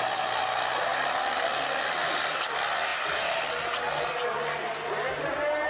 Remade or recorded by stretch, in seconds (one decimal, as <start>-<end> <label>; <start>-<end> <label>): 0.0-2.9 recorded; 2.9-3.4 remade; 3.4-5.7 recorded